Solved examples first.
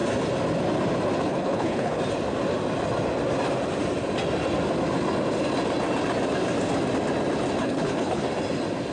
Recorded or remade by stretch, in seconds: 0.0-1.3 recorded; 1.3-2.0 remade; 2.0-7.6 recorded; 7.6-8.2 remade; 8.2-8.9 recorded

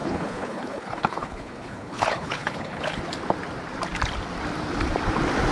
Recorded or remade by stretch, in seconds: 0.0-3.0 remade; 3.0-5.5 recorded

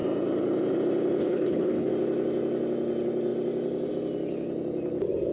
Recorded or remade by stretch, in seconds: 0.0-1.2 recorded; 1.2-1.9 remade; 1.9-5.3 recorded

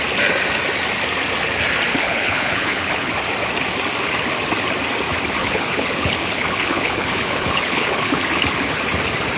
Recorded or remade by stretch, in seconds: 0.0-1.9 recorded; 1.9-3.1 remade; 3.1-5.4 recorded; 5.4-8.2 remade; 8.2-9.4 recorded

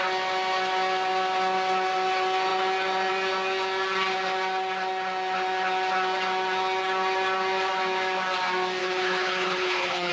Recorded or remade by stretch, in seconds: 0.0-8.8 recorded; 8.8-10.1 remade

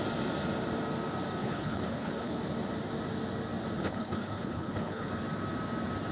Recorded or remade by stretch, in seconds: 0.0-1.4 recorded; 1.4-2.4 remade; 2.4-3.8 recorded; 3.8-5.1 remade; 5.1-6.1 recorded